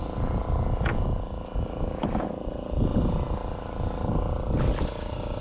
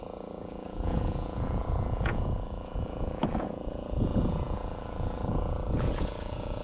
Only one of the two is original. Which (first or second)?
first